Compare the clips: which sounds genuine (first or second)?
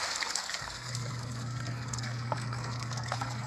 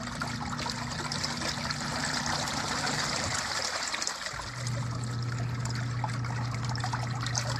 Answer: second